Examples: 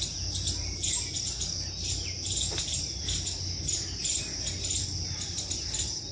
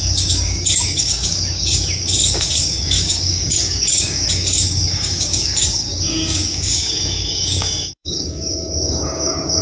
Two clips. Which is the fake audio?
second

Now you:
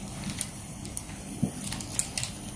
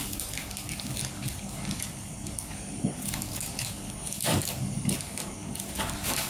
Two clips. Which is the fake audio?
second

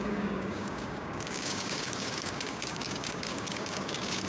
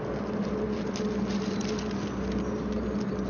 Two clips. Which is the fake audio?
first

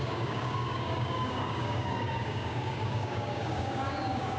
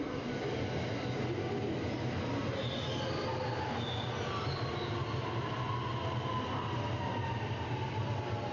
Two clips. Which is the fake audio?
first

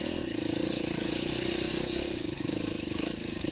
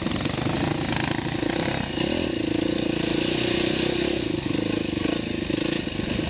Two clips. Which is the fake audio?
first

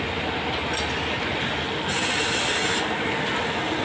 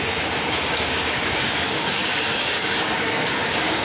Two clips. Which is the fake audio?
second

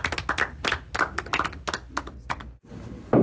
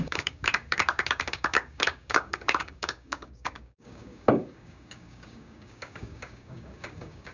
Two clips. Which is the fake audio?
second